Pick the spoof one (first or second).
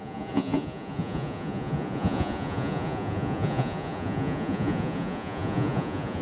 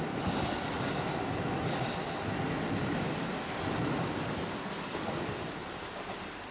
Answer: first